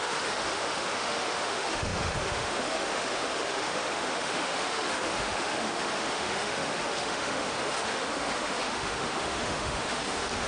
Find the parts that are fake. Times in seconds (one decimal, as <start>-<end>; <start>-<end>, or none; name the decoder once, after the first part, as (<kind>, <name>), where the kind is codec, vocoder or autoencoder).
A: 0.0-10.5 (autoencoder, DAC-VAE)